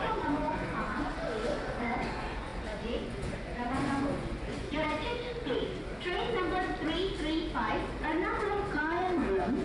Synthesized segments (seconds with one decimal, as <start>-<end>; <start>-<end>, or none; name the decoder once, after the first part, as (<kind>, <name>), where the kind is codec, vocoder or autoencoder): 0.0-1.1 (vocoder, Vocos); 1.8-5.1; 8.5-9.6